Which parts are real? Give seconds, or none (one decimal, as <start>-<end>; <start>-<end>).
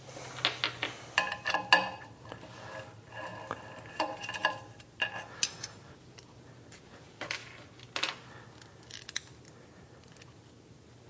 0.0-11.1